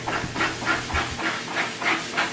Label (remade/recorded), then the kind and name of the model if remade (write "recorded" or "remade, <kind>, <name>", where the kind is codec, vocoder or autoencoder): recorded